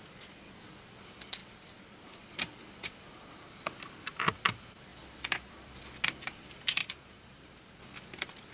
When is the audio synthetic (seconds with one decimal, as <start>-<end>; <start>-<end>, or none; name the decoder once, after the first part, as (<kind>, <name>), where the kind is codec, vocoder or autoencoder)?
6.8-7.8 (vocoder, BigVGAN v2)

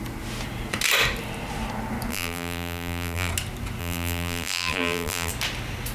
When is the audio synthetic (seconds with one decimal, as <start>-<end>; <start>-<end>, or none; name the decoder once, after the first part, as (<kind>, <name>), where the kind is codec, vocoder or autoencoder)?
2.1-3.3 (vocoder, BigVGAN v2); 3.8-5.3

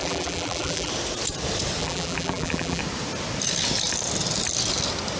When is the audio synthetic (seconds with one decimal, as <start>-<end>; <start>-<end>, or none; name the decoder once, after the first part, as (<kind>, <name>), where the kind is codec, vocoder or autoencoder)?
0.0-0.9 (vocoder, BigVGAN v2); 1.8-2.8

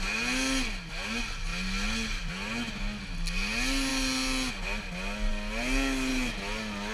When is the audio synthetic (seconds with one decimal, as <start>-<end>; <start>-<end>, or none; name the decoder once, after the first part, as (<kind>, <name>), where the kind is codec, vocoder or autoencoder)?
none

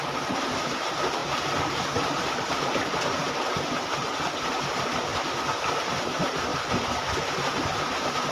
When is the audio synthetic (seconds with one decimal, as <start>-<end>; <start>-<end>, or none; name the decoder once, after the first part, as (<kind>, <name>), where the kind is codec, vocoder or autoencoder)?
0.0-6.5 (vocoder, BigVGAN v2); 7.5-8.3

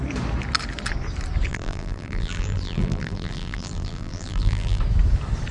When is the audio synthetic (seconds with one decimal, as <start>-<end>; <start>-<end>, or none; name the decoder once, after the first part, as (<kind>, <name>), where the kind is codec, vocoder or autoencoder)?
1.5-4.8 (vocoder, BigVGAN v2)

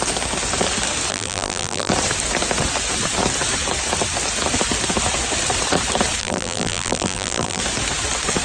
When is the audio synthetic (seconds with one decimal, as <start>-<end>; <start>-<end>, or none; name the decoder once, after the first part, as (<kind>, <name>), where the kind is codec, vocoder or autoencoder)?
1.1-1.9 (vocoder, BigVGAN v2); 6.2-7.6

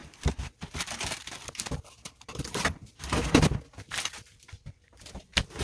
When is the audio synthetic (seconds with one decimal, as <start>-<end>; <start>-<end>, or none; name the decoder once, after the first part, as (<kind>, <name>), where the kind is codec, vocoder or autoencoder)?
0.0-5.6 (vocoder, BigVGAN v2)